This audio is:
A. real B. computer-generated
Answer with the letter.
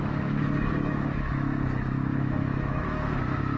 B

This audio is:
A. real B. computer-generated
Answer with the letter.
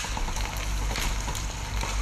A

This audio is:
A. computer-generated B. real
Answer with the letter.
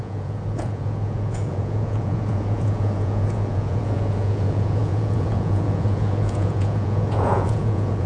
A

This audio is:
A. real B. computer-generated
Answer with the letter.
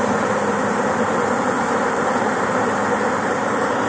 B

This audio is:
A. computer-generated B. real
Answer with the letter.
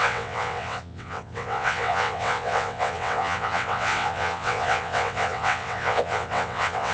A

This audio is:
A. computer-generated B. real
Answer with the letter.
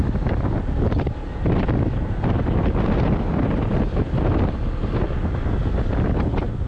B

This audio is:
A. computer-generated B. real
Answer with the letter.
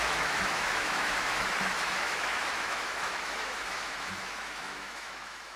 A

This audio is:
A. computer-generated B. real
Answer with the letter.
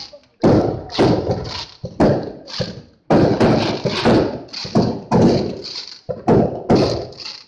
B